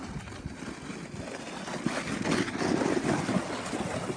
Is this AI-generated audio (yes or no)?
no